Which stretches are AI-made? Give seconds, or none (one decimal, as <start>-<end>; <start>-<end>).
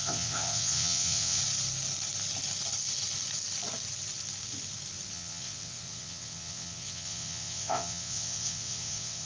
0.0-1.4; 5.1-9.3